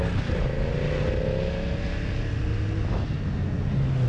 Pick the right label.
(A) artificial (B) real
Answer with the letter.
B